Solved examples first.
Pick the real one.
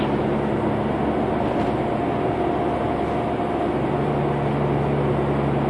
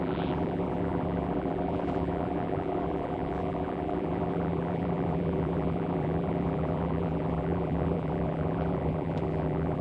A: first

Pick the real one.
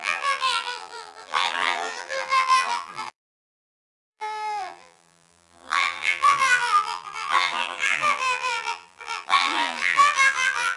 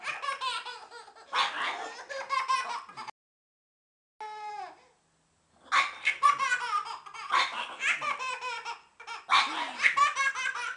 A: second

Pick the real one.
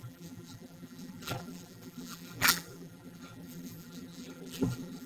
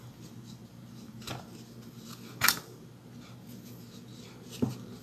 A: second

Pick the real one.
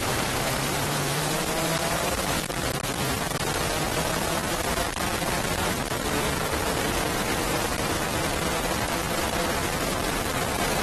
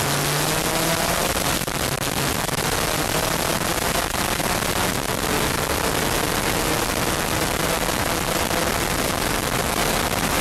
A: second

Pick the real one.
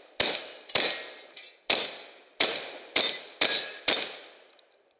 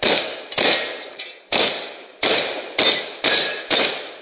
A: first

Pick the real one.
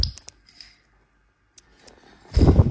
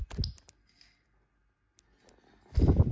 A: second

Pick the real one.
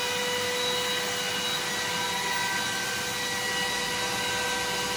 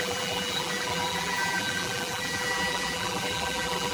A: first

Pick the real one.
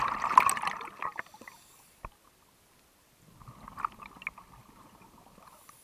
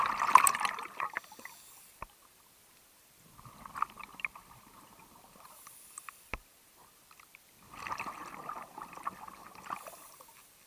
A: first